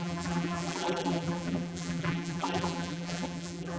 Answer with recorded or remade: remade